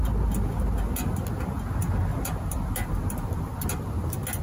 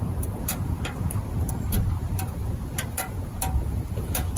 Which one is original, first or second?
first